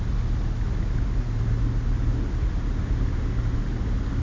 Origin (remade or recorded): recorded